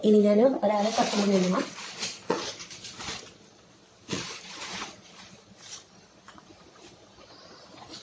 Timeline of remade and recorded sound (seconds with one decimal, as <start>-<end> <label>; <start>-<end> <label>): 0.0-8.0 remade